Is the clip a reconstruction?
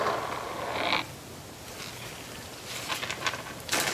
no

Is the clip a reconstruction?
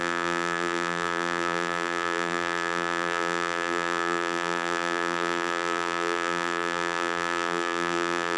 yes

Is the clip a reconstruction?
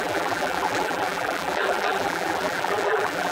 yes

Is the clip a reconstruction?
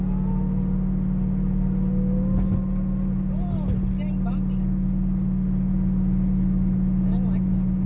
no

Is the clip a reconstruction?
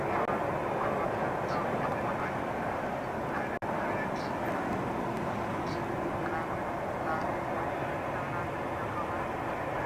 no